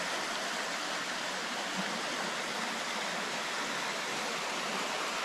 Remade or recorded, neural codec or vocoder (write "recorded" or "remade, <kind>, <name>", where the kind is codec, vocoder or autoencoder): recorded